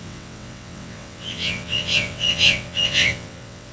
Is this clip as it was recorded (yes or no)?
no